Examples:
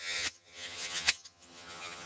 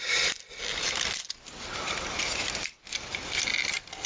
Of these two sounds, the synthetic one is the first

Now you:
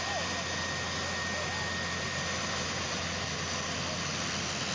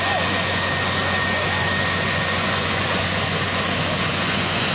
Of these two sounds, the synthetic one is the second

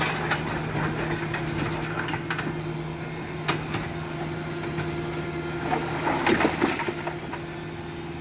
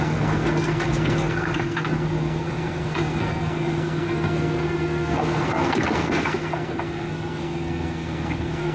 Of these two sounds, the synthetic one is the second